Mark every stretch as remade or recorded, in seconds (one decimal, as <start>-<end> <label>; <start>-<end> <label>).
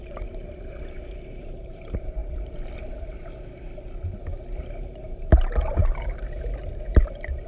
0.0-2.2 remade; 2.2-4.7 recorded; 4.7-7.5 remade